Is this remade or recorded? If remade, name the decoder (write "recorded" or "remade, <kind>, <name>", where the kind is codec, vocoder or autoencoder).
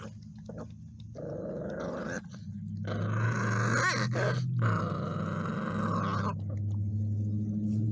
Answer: recorded